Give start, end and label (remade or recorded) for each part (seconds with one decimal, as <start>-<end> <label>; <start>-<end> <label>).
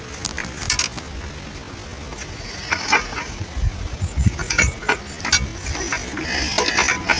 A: 0.0-2.1 recorded; 2.1-5.0 remade; 5.0-7.2 recorded